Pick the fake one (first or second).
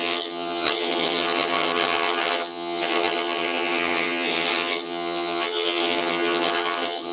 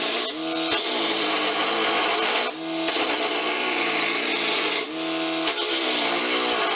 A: first